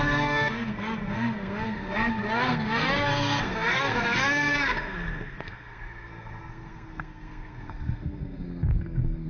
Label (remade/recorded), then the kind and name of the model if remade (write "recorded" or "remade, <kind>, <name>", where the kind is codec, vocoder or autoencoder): remade, codec, SNAC